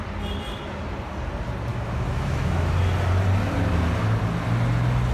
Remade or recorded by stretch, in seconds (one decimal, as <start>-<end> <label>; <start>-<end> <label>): 0.0-1.7 recorded; 1.7-2.7 remade; 2.7-5.1 recorded